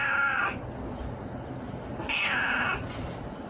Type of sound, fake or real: real